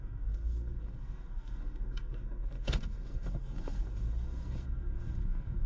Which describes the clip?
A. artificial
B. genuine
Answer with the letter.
A